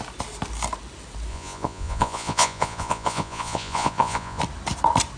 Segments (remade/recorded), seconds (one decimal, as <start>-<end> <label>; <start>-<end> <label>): 0.0-1.3 recorded; 1.3-4.4 remade; 4.4-5.2 recorded

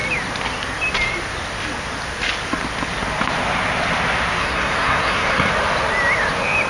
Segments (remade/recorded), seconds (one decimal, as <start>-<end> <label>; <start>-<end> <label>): 0.0-4.4 recorded; 4.4-5.5 remade; 5.5-6.7 recorded

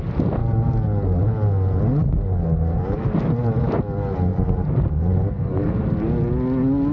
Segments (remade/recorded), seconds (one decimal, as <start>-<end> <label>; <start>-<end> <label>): 0.0-4.3 recorded; 4.3-4.8 remade; 4.8-5.5 recorded; 5.5-6.3 remade; 6.3-6.9 recorded

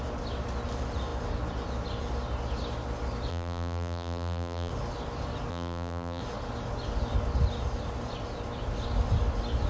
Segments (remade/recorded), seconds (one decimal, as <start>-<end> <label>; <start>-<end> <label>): 0.0-3.3 recorded; 3.3-4.7 remade; 4.7-5.5 recorded; 5.5-6.2 remade; 6.2-9.7 recorded

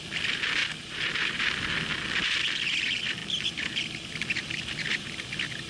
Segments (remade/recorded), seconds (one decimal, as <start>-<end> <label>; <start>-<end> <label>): 0.0-0.6 remade; 0.6-1.1 recorded; 1.1-3.2 remade; 3.2-4.4 recorded; 4.4-5.7 remade

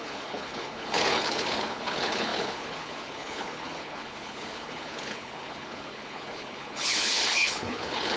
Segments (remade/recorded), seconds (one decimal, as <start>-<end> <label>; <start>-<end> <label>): 0.0-8.2 remade

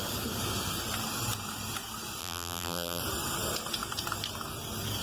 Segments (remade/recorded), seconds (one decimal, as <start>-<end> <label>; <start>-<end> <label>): 0.0-2.2 recorded; 2.2-3.0 remade; 3.0-5.0 recorded